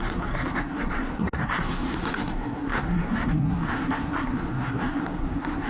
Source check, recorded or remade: remade